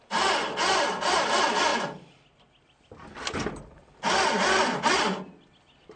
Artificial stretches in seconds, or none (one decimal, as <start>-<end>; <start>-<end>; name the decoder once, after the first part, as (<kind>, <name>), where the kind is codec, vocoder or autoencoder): none